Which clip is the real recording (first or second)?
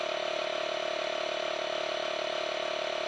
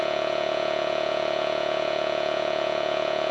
first